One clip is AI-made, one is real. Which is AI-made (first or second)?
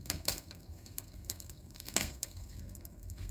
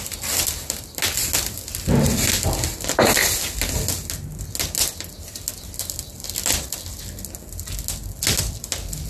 first